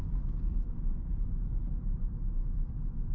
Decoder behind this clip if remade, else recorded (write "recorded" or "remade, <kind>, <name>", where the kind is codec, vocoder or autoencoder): recorded